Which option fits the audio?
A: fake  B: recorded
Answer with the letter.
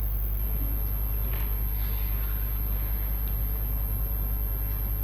B